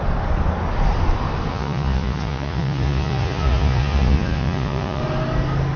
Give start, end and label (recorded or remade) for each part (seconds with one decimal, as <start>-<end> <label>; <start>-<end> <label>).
0.0-1.5 recorded; 1.5-5.0 remade; 5.0-5.8 recorded